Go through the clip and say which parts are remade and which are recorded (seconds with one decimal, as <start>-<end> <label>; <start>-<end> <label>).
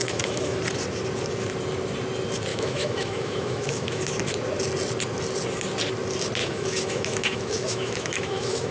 0.0-0.6 remade; 0.6-2.5 recorded; 2.5-4.0 remade; 4.0-6.4 recorded; 6.4-8.7 remade